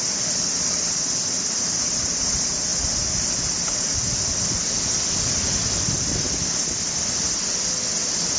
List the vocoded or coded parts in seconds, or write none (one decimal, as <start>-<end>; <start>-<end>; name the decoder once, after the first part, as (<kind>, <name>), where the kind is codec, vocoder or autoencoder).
none

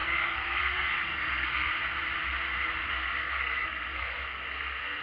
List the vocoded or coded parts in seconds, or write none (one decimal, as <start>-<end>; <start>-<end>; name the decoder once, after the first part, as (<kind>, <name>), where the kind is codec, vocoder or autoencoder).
0.0-1.7 (codec, SNAC); 2.9-5.0

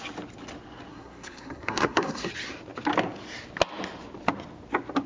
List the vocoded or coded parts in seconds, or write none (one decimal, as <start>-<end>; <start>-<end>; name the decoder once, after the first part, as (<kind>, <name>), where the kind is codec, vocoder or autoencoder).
0.9-2.3 (codec, SNAC)